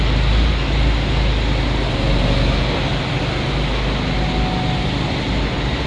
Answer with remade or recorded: recorded